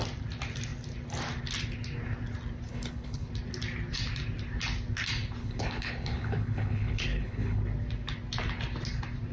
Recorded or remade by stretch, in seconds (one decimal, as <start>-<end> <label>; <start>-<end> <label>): 0.0-2.7 recorded; 2.7-3.3 remade; 3.3-5.4 recorded; 5.4-7.6 remade; 7.6-9.3 recorded